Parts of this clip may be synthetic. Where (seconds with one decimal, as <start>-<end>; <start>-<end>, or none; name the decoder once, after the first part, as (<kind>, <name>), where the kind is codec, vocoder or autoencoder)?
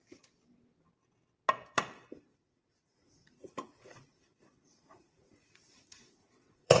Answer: 2.3-6.8 (vocoder, Vocos)